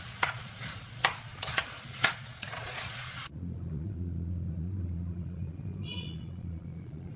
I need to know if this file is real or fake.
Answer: fake